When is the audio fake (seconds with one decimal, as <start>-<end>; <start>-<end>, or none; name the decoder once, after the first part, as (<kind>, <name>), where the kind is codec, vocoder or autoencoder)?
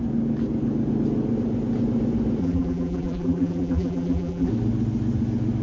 2.4-4.5 (vocoder, BigVGAN v2)